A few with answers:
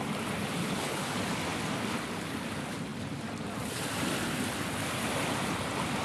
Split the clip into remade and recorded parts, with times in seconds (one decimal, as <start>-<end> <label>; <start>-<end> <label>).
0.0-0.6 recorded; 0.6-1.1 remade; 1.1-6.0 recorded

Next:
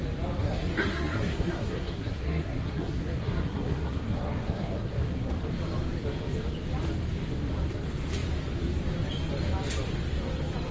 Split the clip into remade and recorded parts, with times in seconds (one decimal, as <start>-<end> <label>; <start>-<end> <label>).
0.0-0.4 recorded; 0.4-5.3 remade; 5.3-10.7 recorded

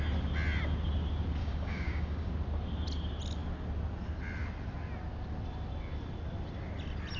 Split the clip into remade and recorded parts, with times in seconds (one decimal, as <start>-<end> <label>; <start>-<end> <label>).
0.0-1.4 recorded; 1.4-2.3 remade; 2.3-7.2 recorded